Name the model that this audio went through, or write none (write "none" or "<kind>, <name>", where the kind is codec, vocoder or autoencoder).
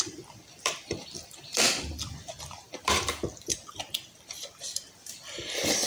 vocoder, BigVGAN v2